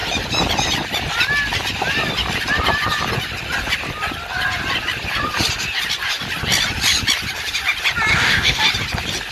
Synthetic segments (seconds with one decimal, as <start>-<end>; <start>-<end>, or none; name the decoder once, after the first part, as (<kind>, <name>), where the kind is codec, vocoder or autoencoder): 8.1-8.6 (codec, DAC)